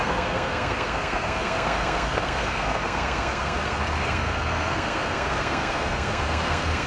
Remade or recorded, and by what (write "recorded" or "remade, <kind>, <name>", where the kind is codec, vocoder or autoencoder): remade, codec, SNAC